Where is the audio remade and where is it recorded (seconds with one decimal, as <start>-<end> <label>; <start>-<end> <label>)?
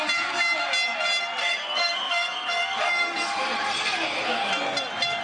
0.0-1.4 recorded; 1.4-4.5 remade; 4.5-5.2 recorded